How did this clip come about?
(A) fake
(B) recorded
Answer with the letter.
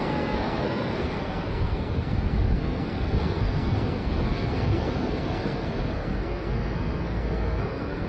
A